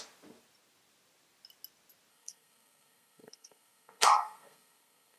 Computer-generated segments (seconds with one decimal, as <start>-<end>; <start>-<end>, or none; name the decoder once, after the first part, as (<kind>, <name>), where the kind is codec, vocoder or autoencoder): 2.1-5.2 (codec, SNAC)